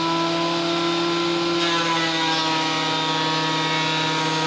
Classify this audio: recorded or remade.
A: recorded